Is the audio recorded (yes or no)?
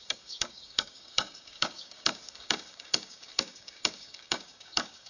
no